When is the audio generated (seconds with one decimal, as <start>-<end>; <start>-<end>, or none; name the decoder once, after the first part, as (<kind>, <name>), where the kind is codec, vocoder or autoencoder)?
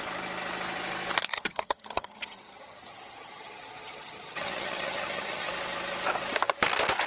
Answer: 1.3-5.5 (vocoder, HiFi-GAN)